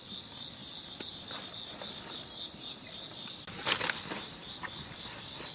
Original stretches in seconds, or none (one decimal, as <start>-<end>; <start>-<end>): 0.0-5.5